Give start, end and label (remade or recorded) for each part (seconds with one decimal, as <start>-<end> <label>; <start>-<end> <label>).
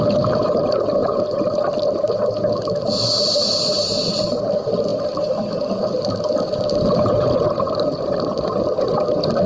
0.0-9.5 recorded